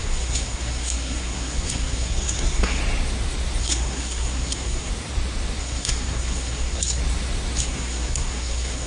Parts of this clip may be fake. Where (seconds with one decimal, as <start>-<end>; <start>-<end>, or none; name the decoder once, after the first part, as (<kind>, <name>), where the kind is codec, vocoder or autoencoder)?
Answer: 0.0-2.8 (codec, SNAC); 3.6-4.9; 5.6-7.0; 7.6-8.9